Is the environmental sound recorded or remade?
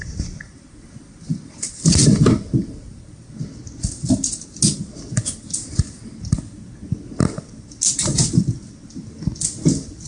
recorded